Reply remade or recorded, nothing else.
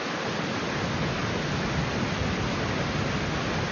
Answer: recorded